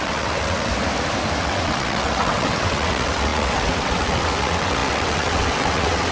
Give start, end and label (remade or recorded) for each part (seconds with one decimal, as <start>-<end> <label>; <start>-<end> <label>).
0.0-0.7 remade; 0.7-1.4 recorded; 1.4-6.1 remade